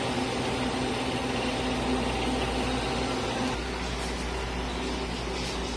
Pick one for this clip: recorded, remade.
recorded